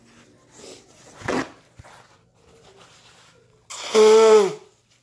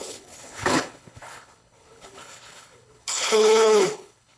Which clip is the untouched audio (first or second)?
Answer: first